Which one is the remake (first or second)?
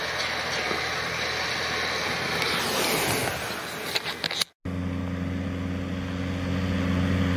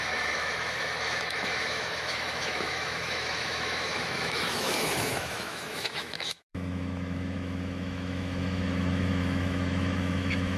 second